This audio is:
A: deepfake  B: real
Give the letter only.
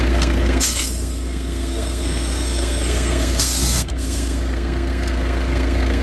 A